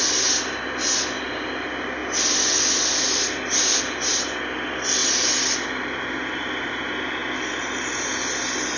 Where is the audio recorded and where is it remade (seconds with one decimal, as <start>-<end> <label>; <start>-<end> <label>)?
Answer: 0.0-8.8 recorded

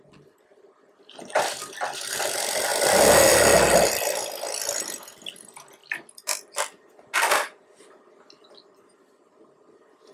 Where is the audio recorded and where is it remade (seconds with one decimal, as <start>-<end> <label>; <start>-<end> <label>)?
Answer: 0.0-0.5 recorded; 0.5-1.4 remade; 1.4-5.8 recorded; 5.8-7.9 remade; 7.9-10.1 recorded